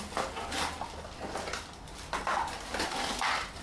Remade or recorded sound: recorded